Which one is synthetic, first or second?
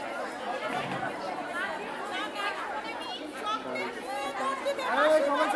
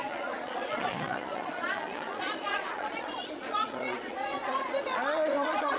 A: second